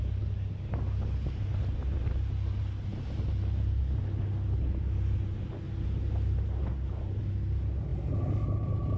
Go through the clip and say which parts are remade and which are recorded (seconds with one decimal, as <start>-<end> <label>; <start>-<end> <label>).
0.0-9.0 recorded